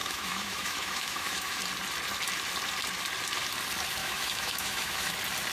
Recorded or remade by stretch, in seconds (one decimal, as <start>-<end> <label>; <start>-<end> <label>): 0.0-1.6 remade; 1.6-4.0 recorded; 4.0-5.1 remade; 5.1-5.5 recorded